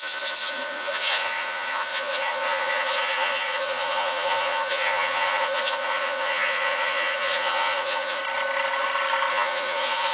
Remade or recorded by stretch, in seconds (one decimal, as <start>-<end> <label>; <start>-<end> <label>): 0.0-8.2 remade; 8.2-9.3 recorded; 9.3-10.1 remade